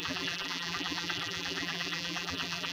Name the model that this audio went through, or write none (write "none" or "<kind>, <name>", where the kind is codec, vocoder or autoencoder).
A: vocoder, BigVGAN v2